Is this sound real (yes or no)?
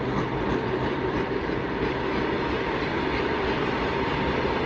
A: yes